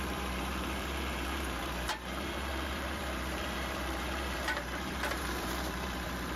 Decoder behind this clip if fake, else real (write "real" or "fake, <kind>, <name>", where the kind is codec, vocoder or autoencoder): fake, vocoder, BigVGAN v2